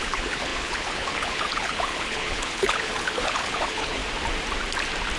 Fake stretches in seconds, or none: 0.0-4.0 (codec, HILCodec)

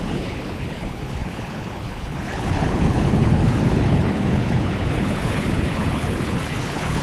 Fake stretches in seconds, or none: 0.0-7.0 (codec, HILCodec)

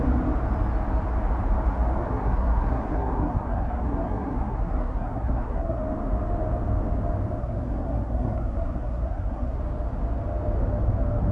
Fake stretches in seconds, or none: 2.0-5.8 (codec, SNAC); 7.4-9.6

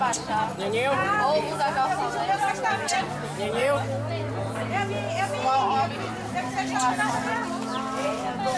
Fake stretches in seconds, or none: none

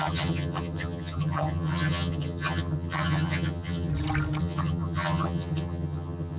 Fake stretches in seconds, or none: 0.0-3.9 (vocoder, HiFi-GAN); 4.4-6.4

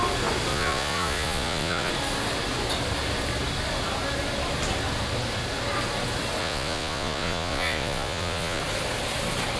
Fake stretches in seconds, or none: 0.5-1.9 (vocoder, Vocos); 6.4-8.6

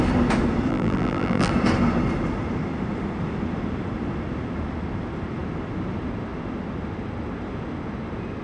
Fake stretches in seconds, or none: 0.7-1.5 (vocoder, BigVGAN v2)

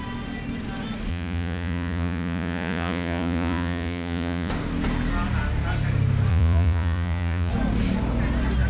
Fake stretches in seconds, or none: 1.1-4.5 (vocoder, Vocos); 6.3-7.5